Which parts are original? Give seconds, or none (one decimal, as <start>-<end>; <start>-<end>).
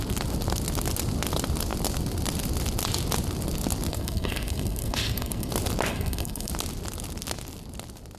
0.0-3.9; 5.5-5.9; 6.5-8.2